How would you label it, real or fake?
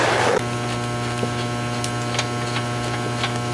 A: real